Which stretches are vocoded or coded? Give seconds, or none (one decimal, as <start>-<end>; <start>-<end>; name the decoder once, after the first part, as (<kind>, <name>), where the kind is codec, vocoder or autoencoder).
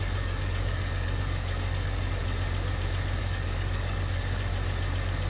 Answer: 0.0-2.2 (codec, DAC); 3.2-4.5